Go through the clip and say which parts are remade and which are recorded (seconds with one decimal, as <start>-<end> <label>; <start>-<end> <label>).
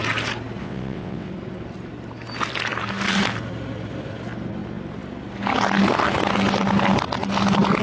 0.0-0.6 recorded; 0.6-1.3 remade; 1.3-7.8 recorded